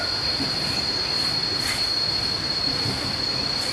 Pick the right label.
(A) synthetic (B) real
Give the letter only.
B